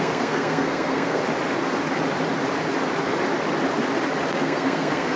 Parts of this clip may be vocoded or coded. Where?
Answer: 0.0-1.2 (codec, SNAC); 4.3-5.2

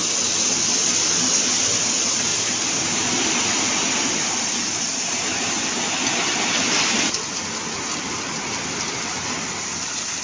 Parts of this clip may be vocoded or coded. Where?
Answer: 2.3-7.4 (vocoder, BigVGAN v2)

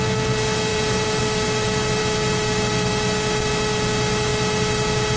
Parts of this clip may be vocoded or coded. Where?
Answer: 0.7-1.2 (vocoder, BigVGAN v2)

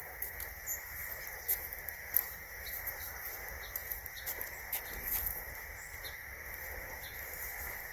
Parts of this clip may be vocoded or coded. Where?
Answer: 0.0-3.8 (vocoder, BigVGAN v2)

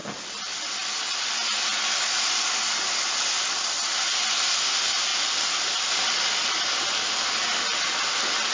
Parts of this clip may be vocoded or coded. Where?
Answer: none

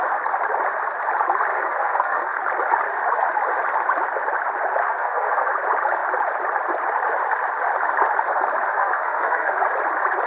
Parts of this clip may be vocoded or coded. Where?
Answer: 1.5-2.4 (codec, SNAC); 4.8-5.5; 8.7-9.6

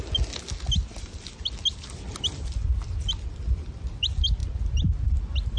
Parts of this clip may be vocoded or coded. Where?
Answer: none